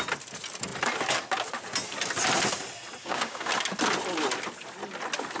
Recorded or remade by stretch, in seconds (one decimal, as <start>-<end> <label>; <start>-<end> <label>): 0.0-3.0 recorded; 3.0-3.5 remade; 3.5-5.4 recorded